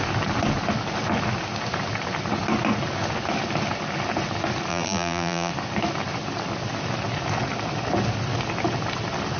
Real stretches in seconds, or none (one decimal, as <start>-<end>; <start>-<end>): 0.0-4.7; 5.5-9.4